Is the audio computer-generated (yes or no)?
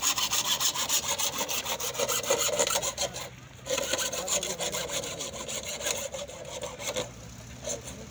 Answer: no